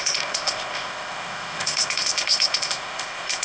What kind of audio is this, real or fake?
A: fake